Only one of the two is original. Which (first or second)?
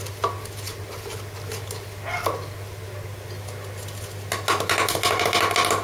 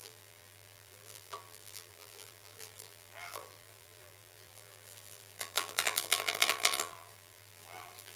first